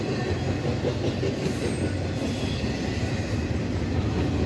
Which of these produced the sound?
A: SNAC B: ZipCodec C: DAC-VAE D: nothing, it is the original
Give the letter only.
D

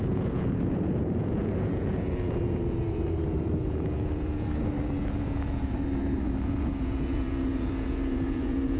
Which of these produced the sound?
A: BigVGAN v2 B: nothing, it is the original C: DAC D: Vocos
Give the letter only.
D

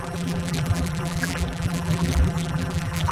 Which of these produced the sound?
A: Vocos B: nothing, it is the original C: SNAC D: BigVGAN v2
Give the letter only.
D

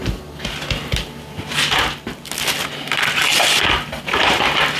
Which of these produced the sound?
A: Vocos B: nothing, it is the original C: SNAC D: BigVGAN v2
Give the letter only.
B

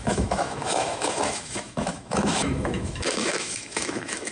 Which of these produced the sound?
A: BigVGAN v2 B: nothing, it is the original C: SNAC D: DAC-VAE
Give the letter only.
D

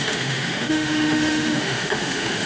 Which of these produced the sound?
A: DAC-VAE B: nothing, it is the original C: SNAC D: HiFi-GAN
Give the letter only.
A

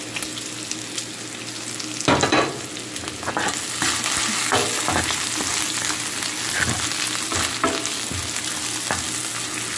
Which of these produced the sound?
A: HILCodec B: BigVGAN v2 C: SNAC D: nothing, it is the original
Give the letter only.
D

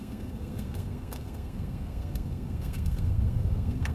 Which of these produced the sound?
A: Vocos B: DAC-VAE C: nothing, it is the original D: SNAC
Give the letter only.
D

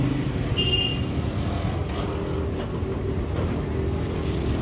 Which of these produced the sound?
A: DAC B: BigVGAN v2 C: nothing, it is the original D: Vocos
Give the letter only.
C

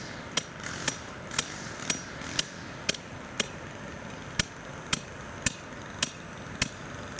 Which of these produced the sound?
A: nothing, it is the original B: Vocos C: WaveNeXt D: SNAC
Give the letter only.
A